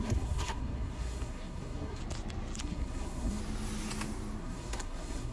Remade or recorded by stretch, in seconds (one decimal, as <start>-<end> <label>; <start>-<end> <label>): 0.0-2.0 remade; 2.0-2.6 recorded; 2.6-3.4 remade; 3.4-4.4 recorded; 4.4-5.3 remade